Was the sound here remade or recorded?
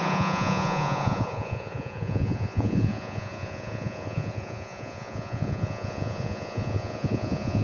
remade